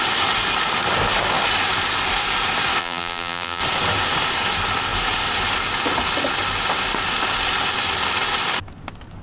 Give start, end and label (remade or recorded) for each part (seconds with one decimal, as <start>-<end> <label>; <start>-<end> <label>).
0.0-2.8 recorded; 2.8-3.6 remade; 3.6-9.2 recorded